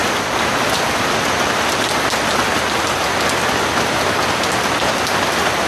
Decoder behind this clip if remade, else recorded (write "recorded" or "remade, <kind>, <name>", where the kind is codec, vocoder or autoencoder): remade, vocoder, BigVGAN v2